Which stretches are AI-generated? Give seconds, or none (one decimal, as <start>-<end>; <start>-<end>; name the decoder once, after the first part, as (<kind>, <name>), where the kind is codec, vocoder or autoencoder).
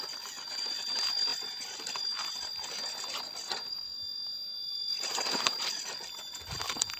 none